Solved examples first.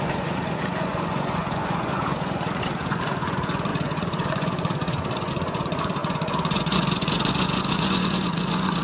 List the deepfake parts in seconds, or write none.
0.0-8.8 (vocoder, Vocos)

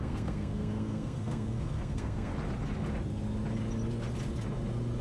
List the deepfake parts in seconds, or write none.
0.0-2.3 (codec, SNAC)

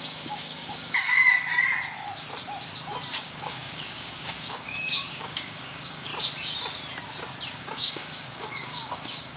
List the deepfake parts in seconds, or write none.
0.0-1.5 (codec, DAC); 3.1-6.1; 7.5-9.4

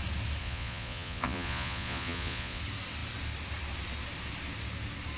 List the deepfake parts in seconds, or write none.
0.4-2.6 (vocoder, Vocos)

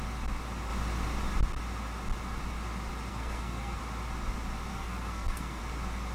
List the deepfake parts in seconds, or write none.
3.1-3.8 (codec, SNAC); 4.7-5.6

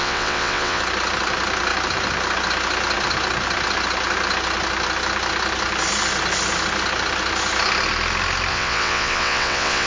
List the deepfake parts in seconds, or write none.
0.0-0.8 (vocoder, WaveNeXt); 8.5-9.9

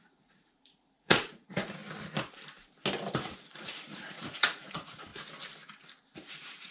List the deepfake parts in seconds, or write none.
0.0-1.8 (vocoder, Vocos); 3.2-5.1; 6.3-6.7